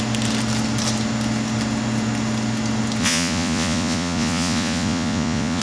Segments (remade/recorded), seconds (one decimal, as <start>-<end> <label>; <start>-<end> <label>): 0.0-3.0 recorded; 3.0-5.6 remade